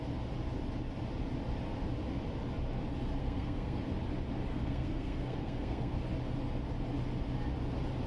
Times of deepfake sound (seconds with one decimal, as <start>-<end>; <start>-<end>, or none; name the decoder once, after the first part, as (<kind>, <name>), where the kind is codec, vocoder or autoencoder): 3.2-3.8 (codec, SNAC); 4.5-6.0